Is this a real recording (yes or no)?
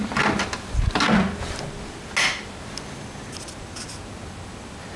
yes